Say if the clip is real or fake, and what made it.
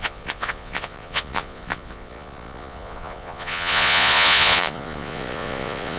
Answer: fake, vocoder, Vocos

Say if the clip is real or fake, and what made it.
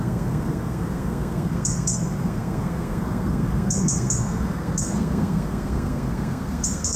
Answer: fake, codec, SNAC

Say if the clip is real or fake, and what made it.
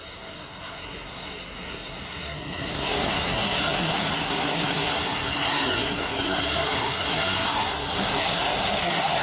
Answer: fake, codec, SNAC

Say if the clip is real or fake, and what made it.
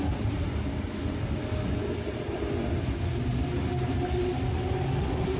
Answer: real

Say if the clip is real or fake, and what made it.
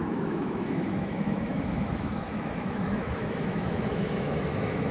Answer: fake, autoencoder, DAC-VAE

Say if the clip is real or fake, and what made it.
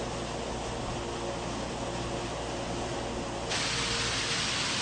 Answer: real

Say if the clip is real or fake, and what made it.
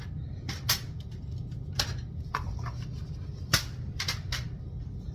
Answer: real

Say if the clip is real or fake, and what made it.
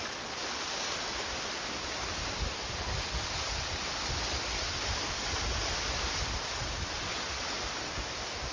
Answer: real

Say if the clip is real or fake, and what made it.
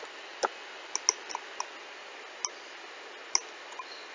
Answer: real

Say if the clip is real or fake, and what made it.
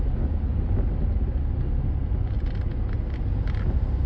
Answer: real